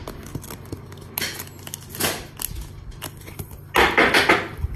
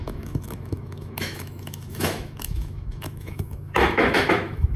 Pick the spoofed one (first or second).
second